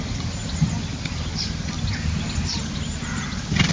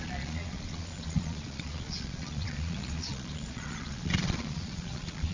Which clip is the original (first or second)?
first